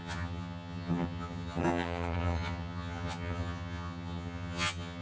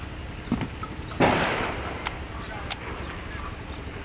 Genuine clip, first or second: second